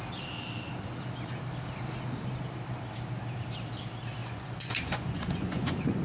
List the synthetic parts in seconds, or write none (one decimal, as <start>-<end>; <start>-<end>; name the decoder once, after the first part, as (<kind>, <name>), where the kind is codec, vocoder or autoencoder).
4.2-6.0 (vocoder, Vocos)